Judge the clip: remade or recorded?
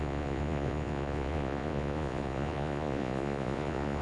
remade